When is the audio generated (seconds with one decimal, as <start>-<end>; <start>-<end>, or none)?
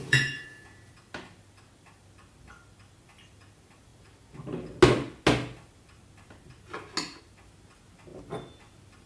0.0-0.9